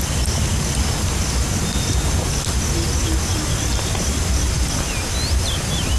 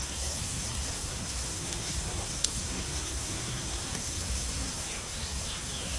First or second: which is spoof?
second